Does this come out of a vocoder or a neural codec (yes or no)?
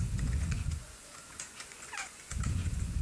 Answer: yes